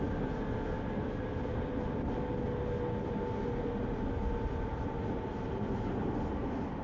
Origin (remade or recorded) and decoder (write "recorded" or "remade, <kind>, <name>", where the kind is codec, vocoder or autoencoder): recorded